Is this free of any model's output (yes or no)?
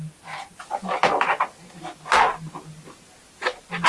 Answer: yes